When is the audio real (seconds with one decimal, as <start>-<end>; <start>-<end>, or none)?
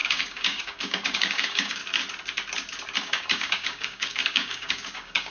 1.8-3.0